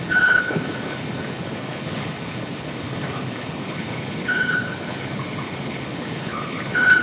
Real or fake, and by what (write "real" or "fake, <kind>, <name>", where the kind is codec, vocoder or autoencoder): fake, codec, HILCodec